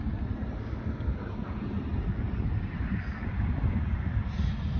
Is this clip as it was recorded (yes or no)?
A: yes